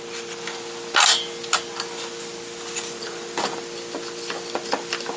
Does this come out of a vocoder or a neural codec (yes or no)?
no